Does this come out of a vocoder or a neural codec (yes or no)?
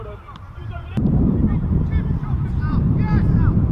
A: yes